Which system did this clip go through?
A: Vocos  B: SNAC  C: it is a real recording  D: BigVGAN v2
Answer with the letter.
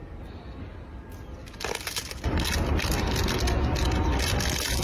C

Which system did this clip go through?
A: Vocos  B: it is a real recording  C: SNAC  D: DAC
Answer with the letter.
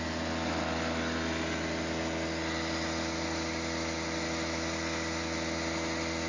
B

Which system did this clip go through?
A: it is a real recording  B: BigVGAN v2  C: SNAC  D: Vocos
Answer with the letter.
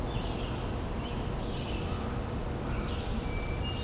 A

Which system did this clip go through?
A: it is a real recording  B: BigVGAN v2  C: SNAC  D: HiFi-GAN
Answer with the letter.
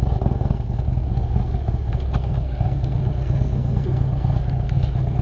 C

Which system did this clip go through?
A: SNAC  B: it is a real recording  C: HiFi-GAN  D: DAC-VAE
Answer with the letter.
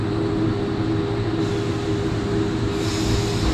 B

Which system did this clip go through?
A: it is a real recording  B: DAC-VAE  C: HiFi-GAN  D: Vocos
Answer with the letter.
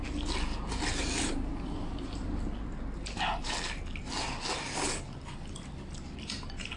A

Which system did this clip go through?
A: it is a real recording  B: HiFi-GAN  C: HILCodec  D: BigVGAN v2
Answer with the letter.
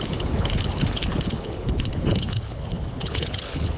C